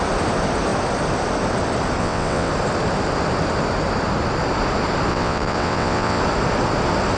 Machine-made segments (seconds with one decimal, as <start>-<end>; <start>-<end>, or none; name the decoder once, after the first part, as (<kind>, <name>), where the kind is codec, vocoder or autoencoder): 2.0-2.5 (vocoder, WaveNeXt); 5.1-6.2